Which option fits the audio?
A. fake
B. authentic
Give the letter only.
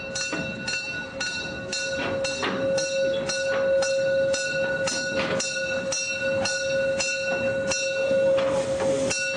B